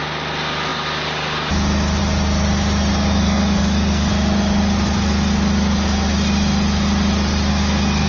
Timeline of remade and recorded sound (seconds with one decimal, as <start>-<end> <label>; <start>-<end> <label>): 0.0-2.9 recorded; 2.9-4.1 remade; 4.1-7.5 recorded; 7.5-8.1 remade